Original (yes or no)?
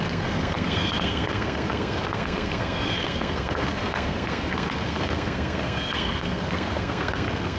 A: no